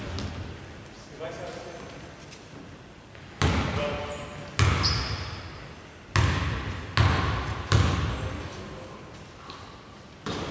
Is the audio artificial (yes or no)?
no